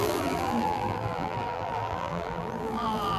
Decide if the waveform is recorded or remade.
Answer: remade